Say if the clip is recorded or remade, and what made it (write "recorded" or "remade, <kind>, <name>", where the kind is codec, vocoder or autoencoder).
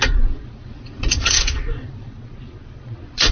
remade, vocoder, Vocos